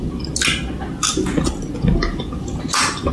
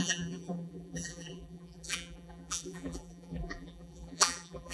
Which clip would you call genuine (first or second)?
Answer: first